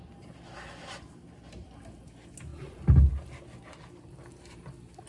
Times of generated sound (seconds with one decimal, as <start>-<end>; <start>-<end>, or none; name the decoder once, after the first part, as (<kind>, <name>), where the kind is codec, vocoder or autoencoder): none